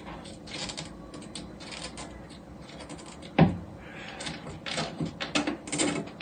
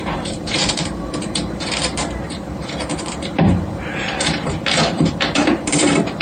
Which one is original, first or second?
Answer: first